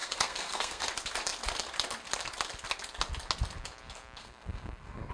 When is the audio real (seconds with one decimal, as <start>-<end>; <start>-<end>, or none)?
0.8-4.2